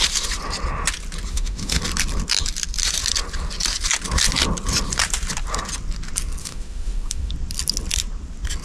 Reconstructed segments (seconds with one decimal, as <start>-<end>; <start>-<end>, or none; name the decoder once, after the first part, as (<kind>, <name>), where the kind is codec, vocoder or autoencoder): 1.3-1.8 (autoencoder, DAC-VAE); 6.4-7.3